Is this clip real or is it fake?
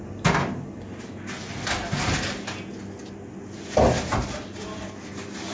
real